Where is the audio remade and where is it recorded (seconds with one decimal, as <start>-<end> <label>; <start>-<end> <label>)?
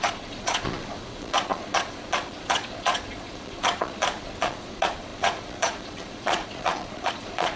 0.0-7.6 remade